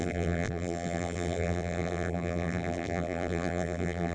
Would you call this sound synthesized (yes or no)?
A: yes